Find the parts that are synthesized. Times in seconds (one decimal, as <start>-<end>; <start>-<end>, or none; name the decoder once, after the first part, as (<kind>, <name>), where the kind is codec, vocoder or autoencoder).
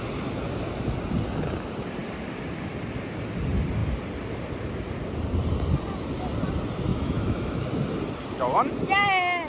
6.9-7.6 (autoencoder, DAC-VAE)